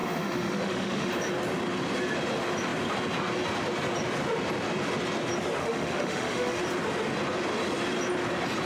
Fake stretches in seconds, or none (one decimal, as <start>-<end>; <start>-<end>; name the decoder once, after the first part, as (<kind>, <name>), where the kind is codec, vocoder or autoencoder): 0.0-1.1 (autoencoder, DAC-VAE); 5.6-6.6